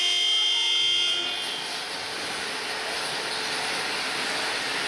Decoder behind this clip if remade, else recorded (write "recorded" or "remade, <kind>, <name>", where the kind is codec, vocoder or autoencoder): recorded